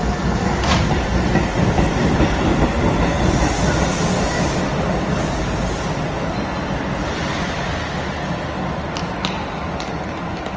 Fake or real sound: real